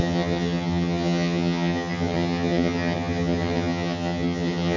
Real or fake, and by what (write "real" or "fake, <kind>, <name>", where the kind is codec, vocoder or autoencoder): fake, vocoder, HiFi-GAN